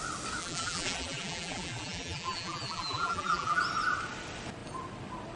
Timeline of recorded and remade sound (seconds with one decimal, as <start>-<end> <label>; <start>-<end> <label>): 0.0-0.4 recorded; 0.4-3.6 remade; 3.6-5.4 recorded